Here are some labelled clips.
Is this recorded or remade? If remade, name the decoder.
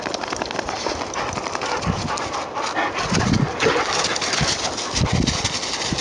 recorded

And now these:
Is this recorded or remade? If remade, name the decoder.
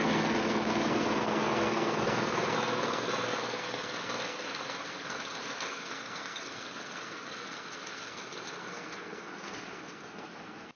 remade, codec, SNAC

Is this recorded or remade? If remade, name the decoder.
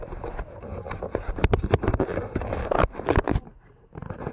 remade, vocoder, BigVGAN v2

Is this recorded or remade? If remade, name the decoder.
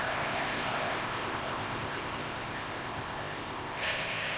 remade, codec, ZipCodec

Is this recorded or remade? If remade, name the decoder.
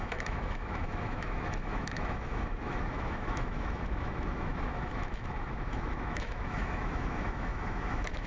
remade, autoencoder, DAC-VAE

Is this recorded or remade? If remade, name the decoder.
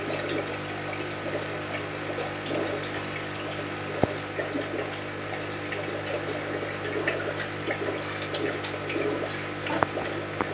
recorded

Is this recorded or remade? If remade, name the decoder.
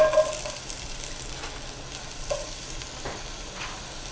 recorded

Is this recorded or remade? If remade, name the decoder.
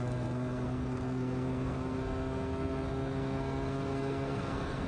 remade, codec, SNAC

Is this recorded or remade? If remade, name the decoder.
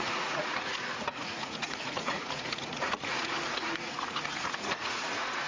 remade, vocoder, Vocos